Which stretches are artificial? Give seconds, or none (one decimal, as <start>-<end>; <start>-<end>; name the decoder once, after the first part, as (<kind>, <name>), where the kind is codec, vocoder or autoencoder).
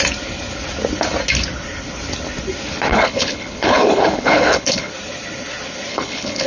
2.9-4.9 (codec, HILCodec); 5.9-6.5